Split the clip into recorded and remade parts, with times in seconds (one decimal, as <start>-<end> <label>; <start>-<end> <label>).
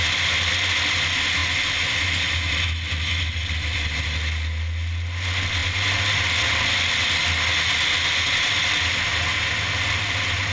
0.0-10.5 recorded